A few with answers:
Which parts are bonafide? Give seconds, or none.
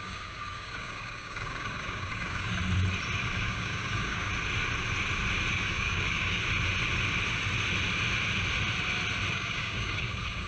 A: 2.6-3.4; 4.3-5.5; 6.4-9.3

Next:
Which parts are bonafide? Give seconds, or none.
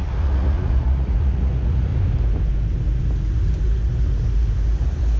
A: 1.9-5.2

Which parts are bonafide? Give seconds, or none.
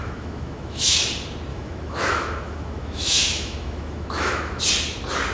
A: 1.0-1.5; 4.6-5.3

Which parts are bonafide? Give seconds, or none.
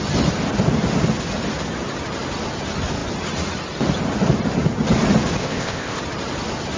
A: 0.0-5.4; 6.0-6.8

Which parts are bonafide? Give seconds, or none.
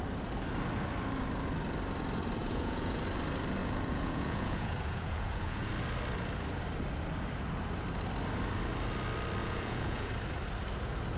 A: 0.0-2.4; 3.0-3.6; 5.7-9.4; 10.1-11.2